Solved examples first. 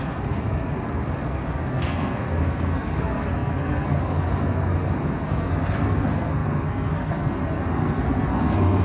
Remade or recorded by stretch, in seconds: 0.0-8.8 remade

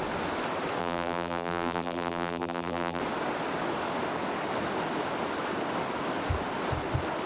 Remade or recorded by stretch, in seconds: 0.0-0.8 recorded; 0.8-3.0 remade; 3.0-7.3 recorded

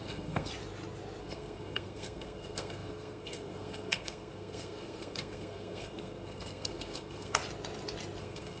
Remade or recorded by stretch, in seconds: 0.0-0.5 remade; 0.5-1.2 recorded; 1.2-7.4 remade; 7.4-8.2 recorded; 8.2-8.6 remade

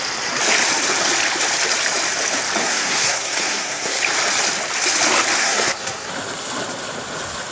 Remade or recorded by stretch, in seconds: 0.0-2.6 recorded; 2.6-4.0 remade; 4.0-5.4 recorded; 5.4-6.1 remade; 6.1-7.5 recorded

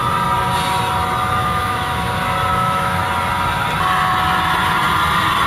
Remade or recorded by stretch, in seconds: 0.0-1.4 recorded; 1.4-2.1 remade; 2.1-2.5 recorded; 2.5-3.0 remade; 3.0-5.5 recorded

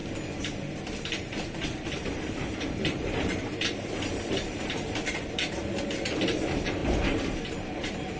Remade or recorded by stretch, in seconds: 0.0-1.0 recorded; 1.0-8.2 remade

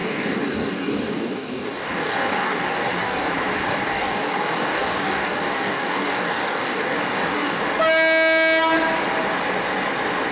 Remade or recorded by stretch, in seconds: 0.0-3.3 remade; 3.3-3.7 recorded; 3.7-7.6 remade; 7.6-10.3 recorded

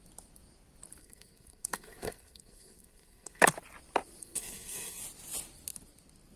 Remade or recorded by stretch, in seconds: 0.0-1.0 recorded; 1.0-3.4 remade; 3.4-4.2 recorded; 4.2-5.0 remade; 5.0-6.4 recorded